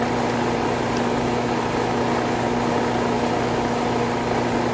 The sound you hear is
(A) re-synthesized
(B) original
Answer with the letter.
B